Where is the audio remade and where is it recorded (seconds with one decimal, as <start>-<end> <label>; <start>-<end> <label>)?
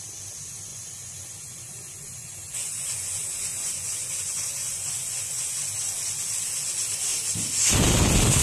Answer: 0.0-0.7 recorded; 0.7-5.6 remade; 5.6-8.4 recorded